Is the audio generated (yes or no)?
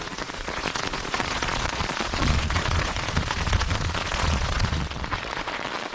yes